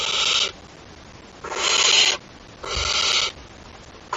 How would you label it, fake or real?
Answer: real